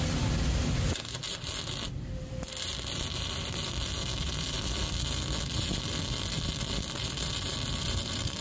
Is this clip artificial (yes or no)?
yes